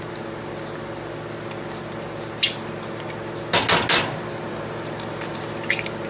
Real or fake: real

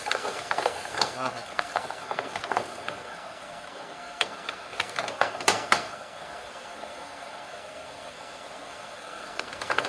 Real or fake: fake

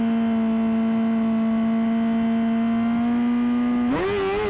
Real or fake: real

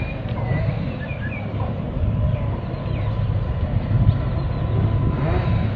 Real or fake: real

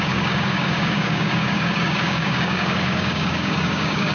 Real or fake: fake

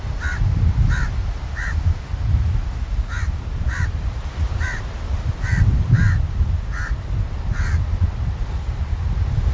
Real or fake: real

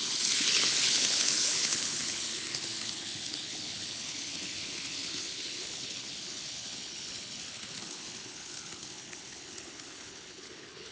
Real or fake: fake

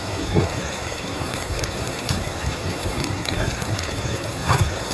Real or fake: fake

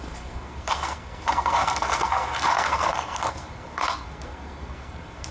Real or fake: fake